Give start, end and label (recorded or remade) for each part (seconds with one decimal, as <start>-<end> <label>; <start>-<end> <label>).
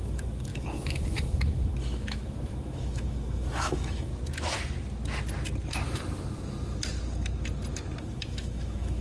0.0-4.1 remade; 4.1-8.0 recorded; 8.0-9.0 remade